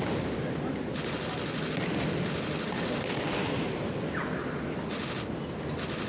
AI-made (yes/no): no